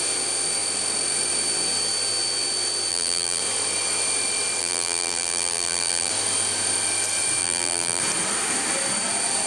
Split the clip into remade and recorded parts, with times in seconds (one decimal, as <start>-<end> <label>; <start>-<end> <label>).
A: 0.0-2.9 recorded; 2.9-3.4 remade; 3.4-4.6 recorded; 4.6-6.1 remade; 6.1-7.4 recorded; 7.4-8.0 remade; 8.0-9.5 recorded